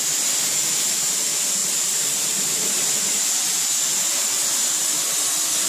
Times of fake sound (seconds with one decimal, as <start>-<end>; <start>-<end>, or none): 1.6-3.2